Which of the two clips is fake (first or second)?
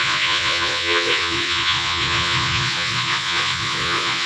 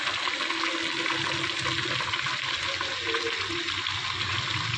first